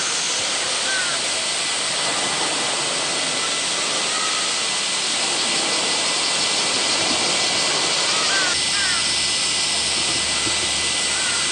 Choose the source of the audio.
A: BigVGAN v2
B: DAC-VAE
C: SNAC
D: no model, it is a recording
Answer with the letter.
D